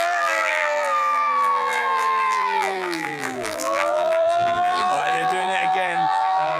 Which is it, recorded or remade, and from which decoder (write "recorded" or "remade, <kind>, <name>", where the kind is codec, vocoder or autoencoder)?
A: remade, vocoder, BigVGAN v2